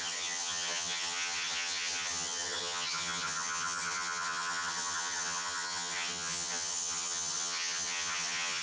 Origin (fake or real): fake